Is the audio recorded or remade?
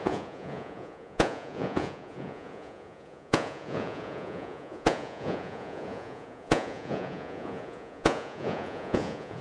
remade